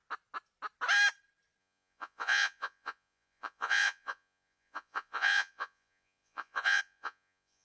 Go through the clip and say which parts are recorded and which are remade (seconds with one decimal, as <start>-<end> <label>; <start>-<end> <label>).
0.0-1.6 recorded; 1.6-7.6 remade